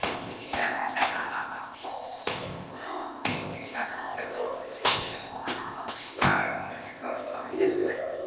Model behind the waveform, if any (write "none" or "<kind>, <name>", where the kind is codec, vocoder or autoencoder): codec, ZipCodec